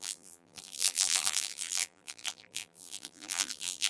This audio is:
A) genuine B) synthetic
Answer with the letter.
B